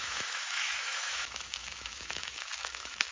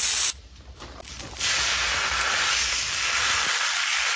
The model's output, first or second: first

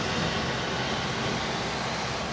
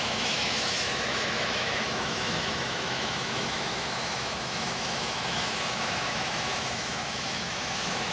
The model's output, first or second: second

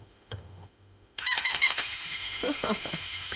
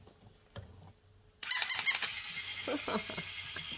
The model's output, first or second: first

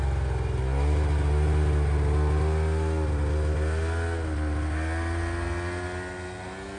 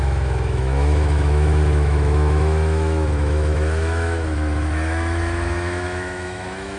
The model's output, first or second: second